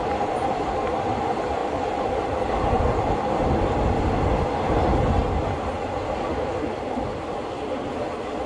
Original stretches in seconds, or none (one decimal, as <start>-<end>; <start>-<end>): 0.0-8.5